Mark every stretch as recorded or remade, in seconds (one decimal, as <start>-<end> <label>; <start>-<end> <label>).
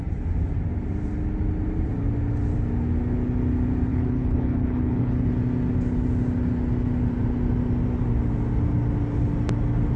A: 0.0-3.9 recorded; 3.9-5.3 remade; 5.3-10.0 recorded